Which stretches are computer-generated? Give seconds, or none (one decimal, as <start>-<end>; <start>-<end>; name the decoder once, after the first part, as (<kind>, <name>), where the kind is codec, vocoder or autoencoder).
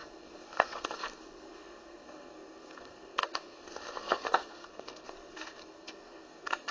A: 0.0-6.7 (codec, SNAC)